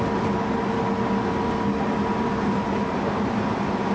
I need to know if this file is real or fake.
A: real